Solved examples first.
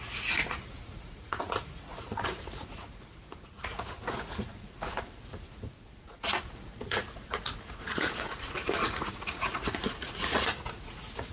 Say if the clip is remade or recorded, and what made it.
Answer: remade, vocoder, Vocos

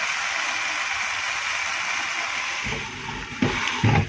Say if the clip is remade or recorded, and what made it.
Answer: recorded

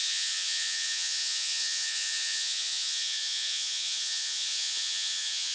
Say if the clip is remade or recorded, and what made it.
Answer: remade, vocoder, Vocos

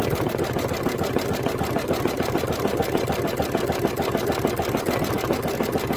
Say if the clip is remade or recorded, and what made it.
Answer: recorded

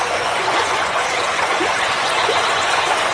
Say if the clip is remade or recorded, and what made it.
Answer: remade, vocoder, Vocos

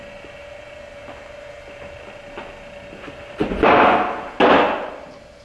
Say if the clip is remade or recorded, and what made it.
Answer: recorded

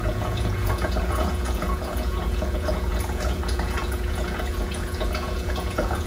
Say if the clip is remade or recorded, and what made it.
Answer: remade, vocoder, Vocos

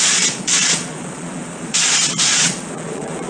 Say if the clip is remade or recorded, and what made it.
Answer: remade, vocoder, Vocos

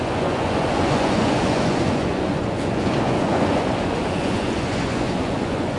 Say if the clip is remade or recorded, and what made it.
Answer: remade, vocoder, Vocos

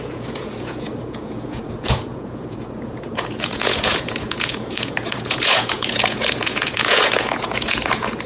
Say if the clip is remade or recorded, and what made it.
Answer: remade, vocoder, Vocos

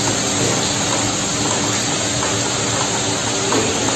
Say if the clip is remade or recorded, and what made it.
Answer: recorded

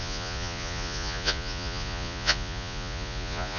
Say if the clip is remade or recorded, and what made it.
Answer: remade, vocoder, Vocos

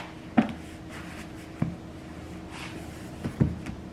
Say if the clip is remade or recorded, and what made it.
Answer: recorded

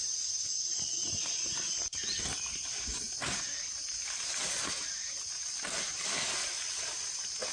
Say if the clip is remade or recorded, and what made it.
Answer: recorded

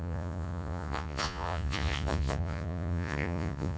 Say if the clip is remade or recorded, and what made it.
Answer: remade, vocoder, Vocos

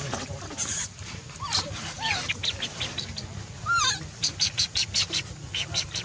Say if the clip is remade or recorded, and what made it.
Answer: recorded